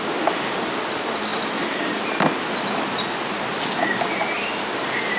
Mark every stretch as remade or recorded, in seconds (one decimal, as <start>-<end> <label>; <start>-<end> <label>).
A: 0.0-5.2 recorded